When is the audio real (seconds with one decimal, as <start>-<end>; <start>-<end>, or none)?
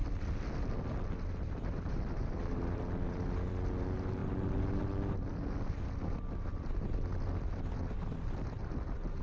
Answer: 0.0-9.2